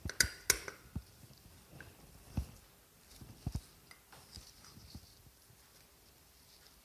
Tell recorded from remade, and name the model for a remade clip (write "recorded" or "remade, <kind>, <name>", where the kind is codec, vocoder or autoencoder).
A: recorded